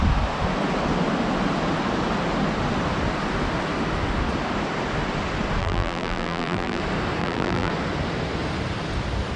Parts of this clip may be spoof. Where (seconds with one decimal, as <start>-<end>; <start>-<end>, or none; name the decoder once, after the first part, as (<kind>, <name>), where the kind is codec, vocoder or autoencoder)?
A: 5.6-6.8 (vocoder, BigVGAN v2); 7.2-7.7